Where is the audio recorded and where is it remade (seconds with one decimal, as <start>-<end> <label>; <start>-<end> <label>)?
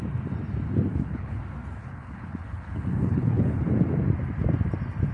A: 0.0-0.9 recorded; 0.9-1.4 remade; 1.4-1.8 recorded; 1.8-3.7 remade; 3.7-5.1 recorded